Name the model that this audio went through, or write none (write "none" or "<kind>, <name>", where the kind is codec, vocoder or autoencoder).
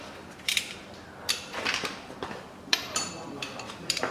vocoder, BigVGAN v2